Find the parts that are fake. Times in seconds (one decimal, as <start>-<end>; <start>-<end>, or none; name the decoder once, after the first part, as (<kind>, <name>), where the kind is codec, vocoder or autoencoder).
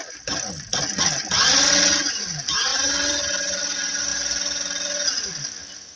0.7-1.3 (vocoder, BigVGAN v2); 2.7-3.6